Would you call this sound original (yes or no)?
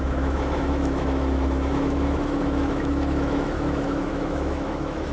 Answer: no